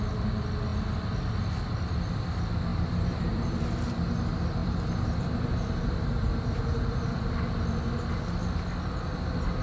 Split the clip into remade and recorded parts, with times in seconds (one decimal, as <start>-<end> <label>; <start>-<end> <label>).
0.0-2.7 recorded; 2.7-3.6 remade; 3.6-4.6 recorded; 4.6-7.3 remade; 7.3-9.6 recorded